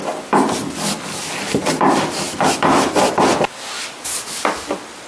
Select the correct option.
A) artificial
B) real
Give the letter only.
B